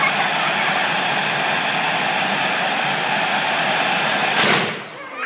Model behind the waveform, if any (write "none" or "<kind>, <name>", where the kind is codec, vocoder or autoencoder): none